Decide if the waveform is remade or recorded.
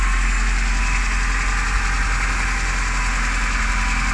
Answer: recorded